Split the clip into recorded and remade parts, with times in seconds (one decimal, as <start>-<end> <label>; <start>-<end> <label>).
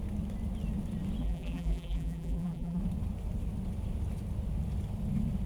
0.0-1.2 recorded; 1.2-2.8 remade; 2.8-5.5 recorded